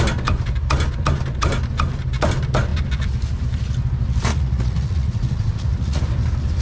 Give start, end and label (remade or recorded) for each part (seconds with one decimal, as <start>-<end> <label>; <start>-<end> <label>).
0.0-4.3 recorded; 4.3-6.0 remade; 6.0-6.6 recorded